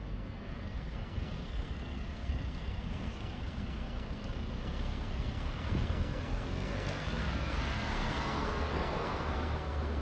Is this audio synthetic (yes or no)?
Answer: yes